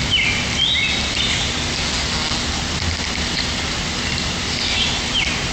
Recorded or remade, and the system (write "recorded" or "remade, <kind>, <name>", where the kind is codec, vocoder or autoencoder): recorded